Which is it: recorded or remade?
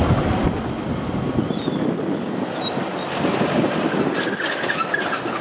recorded